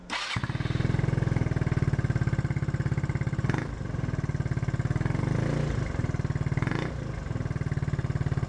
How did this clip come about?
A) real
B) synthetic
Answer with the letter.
A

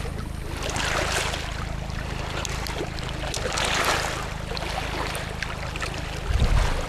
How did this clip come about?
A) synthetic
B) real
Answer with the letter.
B